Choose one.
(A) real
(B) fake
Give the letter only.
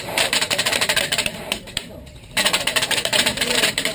B